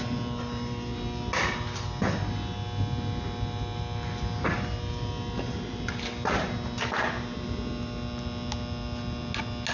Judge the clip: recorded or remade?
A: recorded